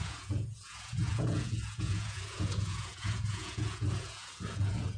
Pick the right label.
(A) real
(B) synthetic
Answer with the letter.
B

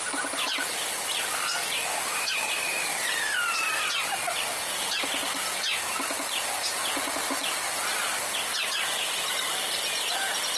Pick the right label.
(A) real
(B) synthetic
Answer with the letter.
A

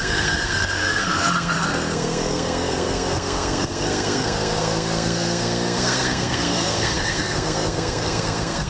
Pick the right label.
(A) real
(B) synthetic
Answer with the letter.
B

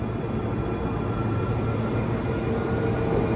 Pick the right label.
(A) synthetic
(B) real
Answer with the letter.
B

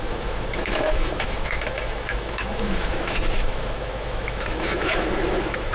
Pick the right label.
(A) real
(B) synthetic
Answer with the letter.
B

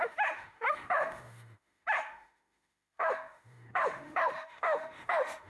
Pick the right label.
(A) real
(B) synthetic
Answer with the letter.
B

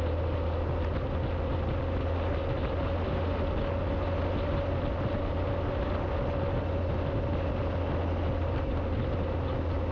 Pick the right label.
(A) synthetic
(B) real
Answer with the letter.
B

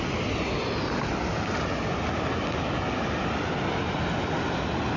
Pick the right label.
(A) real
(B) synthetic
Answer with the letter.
A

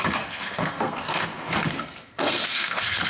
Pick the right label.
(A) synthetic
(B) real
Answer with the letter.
A